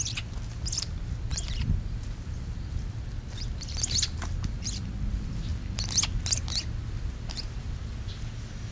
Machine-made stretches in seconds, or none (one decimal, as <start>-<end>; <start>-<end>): 1.3-2.8

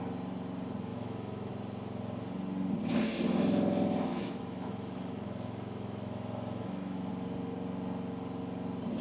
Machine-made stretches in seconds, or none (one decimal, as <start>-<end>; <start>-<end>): 0.9-1.5; 4.1-7.1

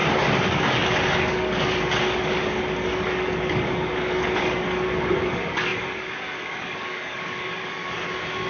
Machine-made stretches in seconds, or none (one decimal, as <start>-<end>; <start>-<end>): 0.0-8.5

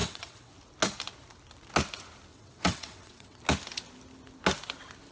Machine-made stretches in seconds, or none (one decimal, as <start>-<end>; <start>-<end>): 0.0-0.5; 2.3-3.4

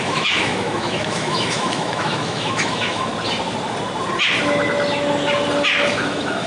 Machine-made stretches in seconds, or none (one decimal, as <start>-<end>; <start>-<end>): 0.0-3.1; 5.9-6.5

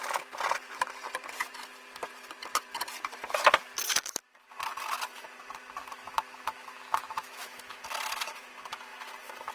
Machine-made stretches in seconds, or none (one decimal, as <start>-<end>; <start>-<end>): 5.8-7.8

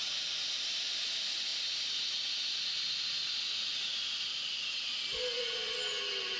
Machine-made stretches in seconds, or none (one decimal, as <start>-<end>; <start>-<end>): none

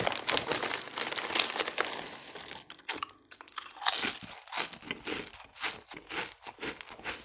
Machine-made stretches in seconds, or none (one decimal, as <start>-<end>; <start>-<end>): none